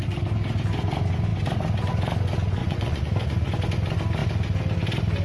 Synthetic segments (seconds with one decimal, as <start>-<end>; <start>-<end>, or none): 2.6-3.5